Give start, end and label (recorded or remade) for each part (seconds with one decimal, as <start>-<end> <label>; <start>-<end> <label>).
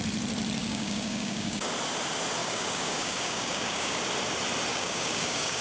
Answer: 0.0-0.6 recorded; 0.6-1.7 remade; 1.7-2.4 recorded; 2.4-4.0 remade; 4.0-4.7 recorded; 4.7-5.6 remade